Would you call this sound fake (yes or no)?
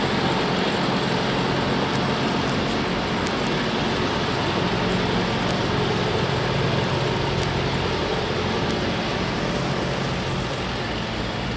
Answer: no